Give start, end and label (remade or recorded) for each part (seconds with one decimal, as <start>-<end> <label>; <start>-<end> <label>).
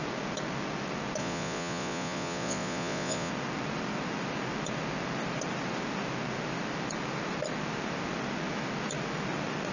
0.0-1.2 recorded; 1.2-3.3 remade; 3.3-9.7 recorded